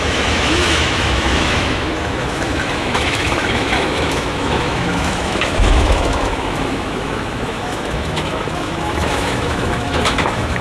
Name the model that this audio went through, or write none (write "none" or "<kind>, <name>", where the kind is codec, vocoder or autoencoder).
autoencoder, DAC-VAE